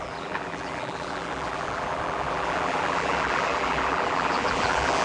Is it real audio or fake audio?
fake